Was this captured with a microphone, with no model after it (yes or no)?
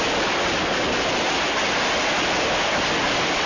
yes